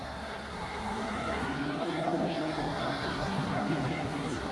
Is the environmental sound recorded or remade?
remade